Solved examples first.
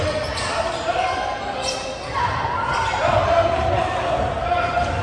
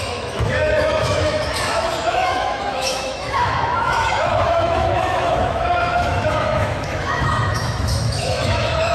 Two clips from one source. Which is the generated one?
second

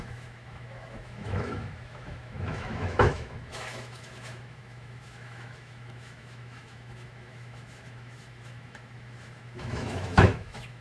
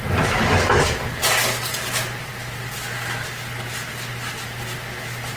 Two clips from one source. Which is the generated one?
first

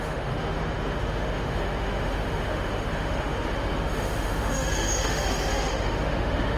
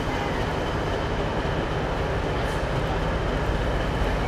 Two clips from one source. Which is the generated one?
first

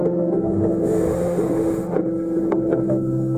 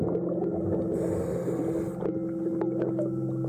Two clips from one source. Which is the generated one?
first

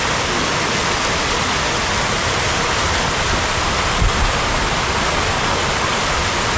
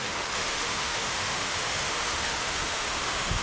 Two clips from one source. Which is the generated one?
second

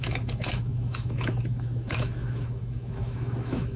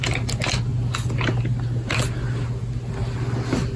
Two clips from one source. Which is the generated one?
first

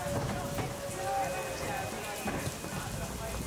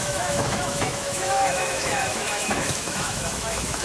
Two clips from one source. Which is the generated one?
second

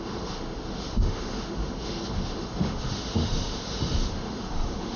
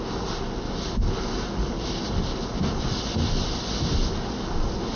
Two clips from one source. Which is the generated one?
first